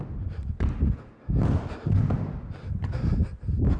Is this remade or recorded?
recorded